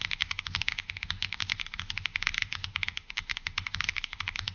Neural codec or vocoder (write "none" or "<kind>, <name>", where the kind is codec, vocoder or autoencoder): autoencoder, DAC-VAE